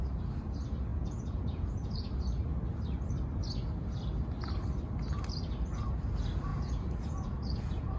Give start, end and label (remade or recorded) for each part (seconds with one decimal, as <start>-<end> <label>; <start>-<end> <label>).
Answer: 0.0-0.9 recorded; 0.9-2.1 remade; 2.1-6.5 recorded; 6.5-8.0 remade